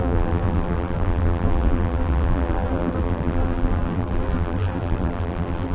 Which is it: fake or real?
fake